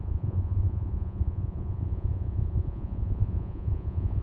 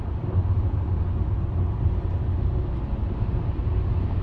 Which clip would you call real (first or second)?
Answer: second